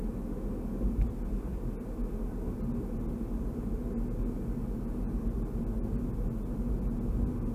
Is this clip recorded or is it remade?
recorded